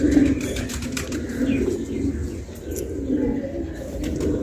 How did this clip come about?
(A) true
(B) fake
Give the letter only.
A